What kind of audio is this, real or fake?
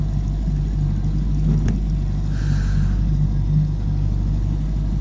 real